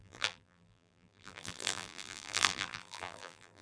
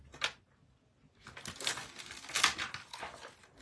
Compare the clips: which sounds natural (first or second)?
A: second